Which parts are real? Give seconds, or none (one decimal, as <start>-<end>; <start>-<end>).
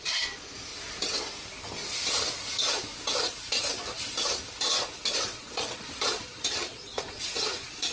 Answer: 0.7-5.1